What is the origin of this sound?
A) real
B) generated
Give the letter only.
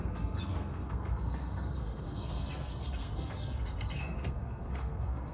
B